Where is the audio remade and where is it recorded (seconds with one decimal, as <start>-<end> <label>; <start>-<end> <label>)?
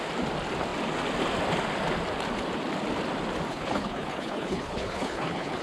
0.0-3.5 recorded; 3.5-5.6 remade